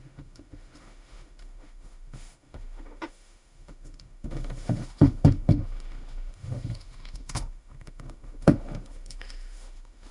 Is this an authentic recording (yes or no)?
no